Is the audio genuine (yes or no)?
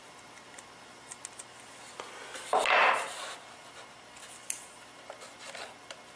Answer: yes